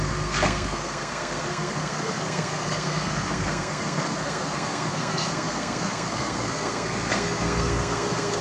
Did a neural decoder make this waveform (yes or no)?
yes